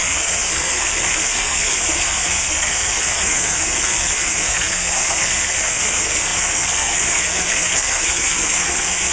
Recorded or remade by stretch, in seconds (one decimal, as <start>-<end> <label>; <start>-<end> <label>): 0.0-9.1 remade